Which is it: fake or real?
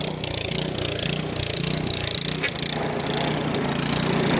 real